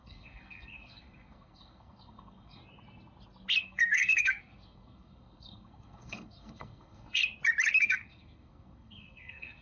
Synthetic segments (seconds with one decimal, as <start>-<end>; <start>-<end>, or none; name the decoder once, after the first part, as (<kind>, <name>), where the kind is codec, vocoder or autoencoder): 0.0-2.6 (codec, SNAC); 3.6-7.2; 7.8-9.6